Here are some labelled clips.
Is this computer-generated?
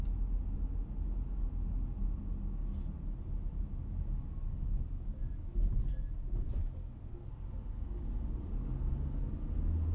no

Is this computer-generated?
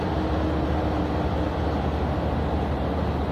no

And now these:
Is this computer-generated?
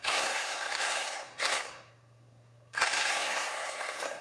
yes